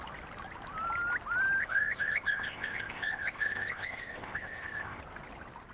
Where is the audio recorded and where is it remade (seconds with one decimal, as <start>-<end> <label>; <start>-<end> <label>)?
0.0-1.6 recorded; 1.6-5.0 remade; 5.0-5.7 recorded